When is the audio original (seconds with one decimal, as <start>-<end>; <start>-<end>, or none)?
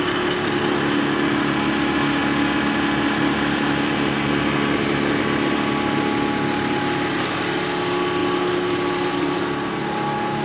0.0-10.4